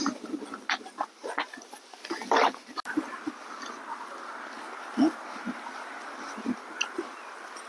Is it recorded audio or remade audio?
recorded